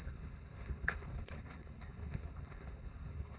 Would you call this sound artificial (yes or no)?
yes